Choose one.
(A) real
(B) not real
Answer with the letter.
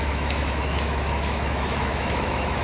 B